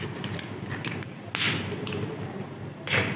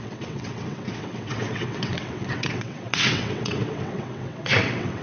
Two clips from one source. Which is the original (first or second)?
first